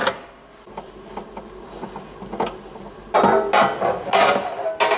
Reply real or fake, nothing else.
real